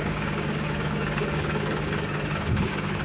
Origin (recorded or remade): remade